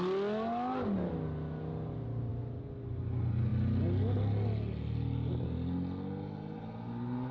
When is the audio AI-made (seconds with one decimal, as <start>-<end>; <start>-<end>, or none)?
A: none